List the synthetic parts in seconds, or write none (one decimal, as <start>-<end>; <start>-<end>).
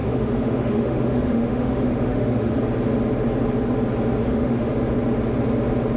0.0-2.6; 4.2-4.7